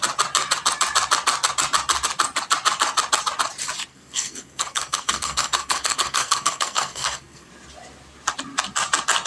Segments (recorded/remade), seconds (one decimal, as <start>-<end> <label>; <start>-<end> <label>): 0.0-3.9 recorded; 3.9-7.5 remade; 7.5-9.3 recorded